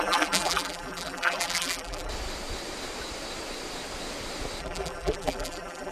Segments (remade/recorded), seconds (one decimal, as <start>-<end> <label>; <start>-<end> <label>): 0.0-2.1 remade; 2.1-4.6 recorded; 4.6-5.9 remade